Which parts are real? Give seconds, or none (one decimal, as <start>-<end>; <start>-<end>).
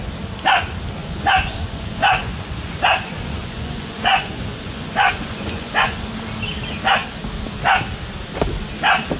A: 0.0-1.0; 6.1-9.2